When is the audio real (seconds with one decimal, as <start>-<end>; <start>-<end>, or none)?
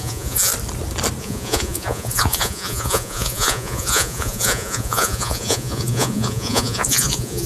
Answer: 0.5-1.2